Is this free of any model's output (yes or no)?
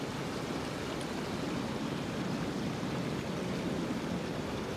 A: yes